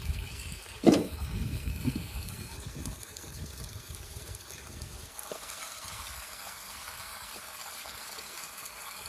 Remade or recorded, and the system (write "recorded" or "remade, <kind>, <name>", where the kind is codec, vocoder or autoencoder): remade, codec, SNAC